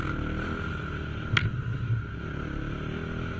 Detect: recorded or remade recorded